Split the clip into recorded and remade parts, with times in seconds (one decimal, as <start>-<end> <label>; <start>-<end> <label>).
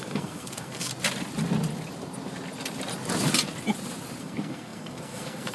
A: 0.0-0.9 remade; 0.9-4.2 recorded; 4.2-5.5 remade